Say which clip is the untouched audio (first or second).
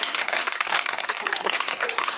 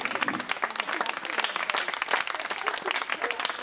second